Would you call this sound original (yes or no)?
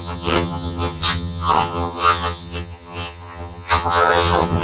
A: no